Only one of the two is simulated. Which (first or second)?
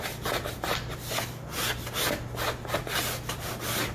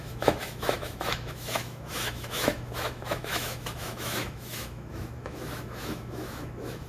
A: second